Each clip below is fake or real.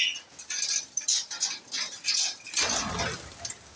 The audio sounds real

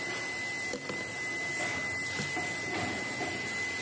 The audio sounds real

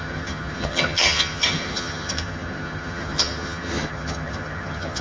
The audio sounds fake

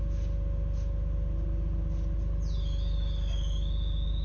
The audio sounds real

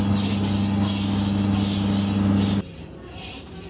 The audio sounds real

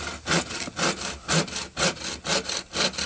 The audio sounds real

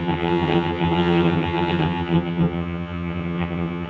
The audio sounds fake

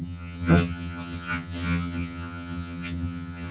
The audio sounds fake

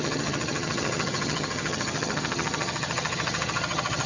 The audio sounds fake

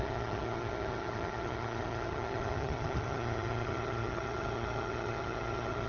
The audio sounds fake